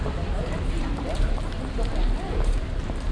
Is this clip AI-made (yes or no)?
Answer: yes